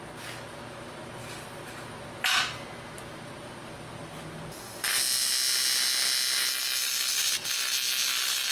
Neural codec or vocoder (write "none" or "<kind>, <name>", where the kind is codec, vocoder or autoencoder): none